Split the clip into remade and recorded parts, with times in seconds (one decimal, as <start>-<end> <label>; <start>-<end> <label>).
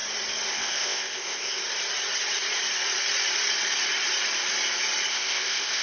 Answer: 0.0-0.5 recorded; 0.5-1.6 remade; 1.6-5.1 recorded; 5.1-5.8 remade